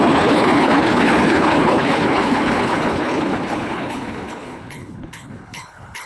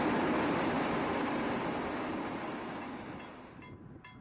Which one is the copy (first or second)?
first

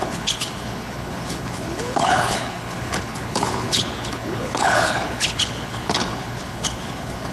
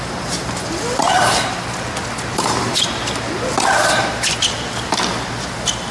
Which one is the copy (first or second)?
first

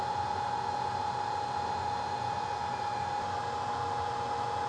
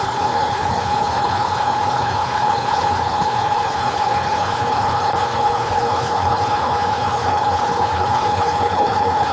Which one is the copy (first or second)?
second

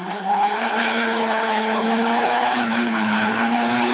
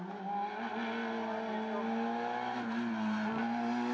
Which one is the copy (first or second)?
first